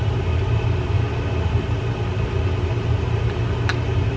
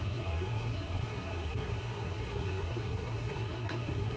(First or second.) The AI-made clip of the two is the second